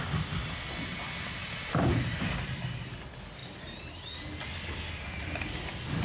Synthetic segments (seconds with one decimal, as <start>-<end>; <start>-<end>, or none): 1.4-2.5